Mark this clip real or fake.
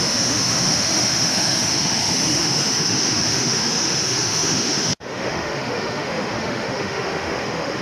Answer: fake